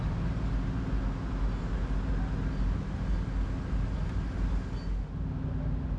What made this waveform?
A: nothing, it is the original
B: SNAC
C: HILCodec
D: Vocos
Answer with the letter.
A